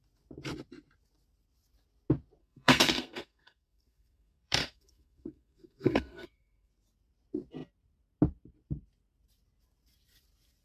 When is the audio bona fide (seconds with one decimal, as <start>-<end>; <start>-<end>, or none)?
0.0-2.4; 6.7-10.6

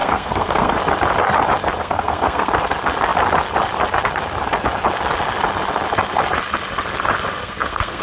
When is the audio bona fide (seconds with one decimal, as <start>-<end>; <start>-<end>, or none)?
0.7-1.8; 2.5-7.4